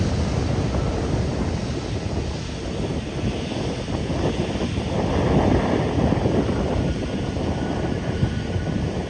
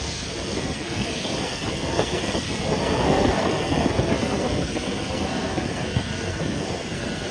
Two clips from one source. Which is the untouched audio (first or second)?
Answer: first